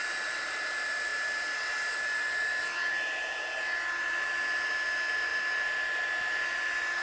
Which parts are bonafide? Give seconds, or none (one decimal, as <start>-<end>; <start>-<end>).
0.0-7.0